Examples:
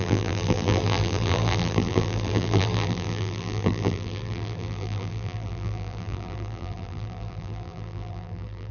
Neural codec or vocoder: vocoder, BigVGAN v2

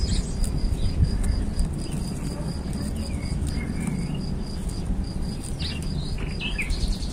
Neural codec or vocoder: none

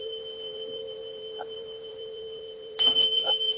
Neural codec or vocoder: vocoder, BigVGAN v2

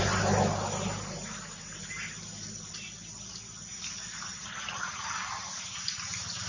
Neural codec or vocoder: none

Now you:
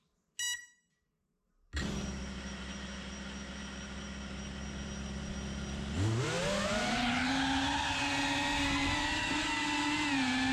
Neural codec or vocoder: none